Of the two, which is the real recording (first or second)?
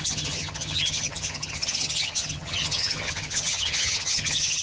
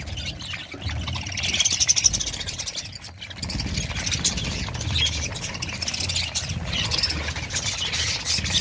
second